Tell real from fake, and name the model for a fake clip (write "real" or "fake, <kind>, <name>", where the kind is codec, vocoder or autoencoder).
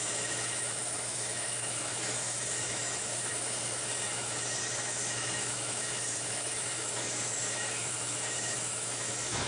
fake, autoencoder, DAC-VAE